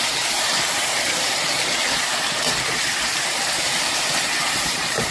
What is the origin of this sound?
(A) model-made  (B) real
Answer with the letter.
A